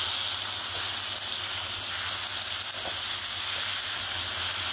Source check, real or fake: real